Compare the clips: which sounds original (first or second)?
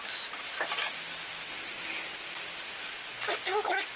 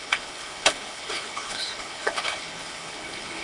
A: first